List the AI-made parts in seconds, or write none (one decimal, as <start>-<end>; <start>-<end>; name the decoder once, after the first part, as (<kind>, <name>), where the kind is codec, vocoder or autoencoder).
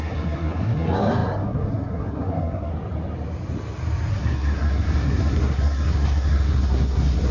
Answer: 0.0-2.7 (codec, SNAC); 4.1-7.3